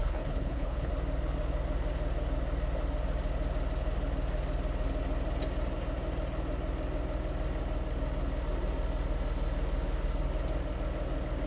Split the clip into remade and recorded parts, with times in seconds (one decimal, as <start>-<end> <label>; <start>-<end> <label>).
0.0-0.9 remade; 0.9-11.5 recorded